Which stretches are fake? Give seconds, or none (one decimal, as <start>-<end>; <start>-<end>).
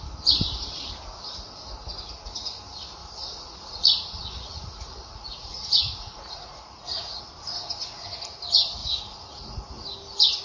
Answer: 3.0-7.2